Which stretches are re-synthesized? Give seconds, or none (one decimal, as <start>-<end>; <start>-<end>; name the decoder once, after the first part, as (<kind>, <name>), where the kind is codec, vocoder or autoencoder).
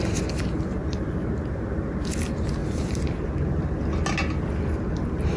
0.8-1.6 (vocoder, BigVGAN v2); 2.6-3.6